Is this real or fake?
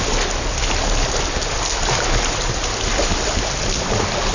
real